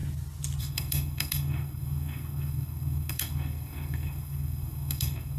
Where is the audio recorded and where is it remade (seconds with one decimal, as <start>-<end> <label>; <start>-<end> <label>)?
0.0-0.6 recorded; 0.6-5.4 remade